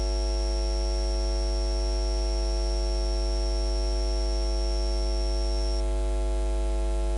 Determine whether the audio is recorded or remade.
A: recorded